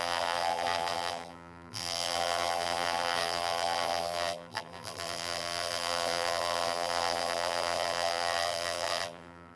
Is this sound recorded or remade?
remade